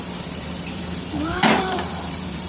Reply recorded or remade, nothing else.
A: remade